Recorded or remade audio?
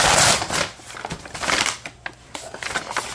recorded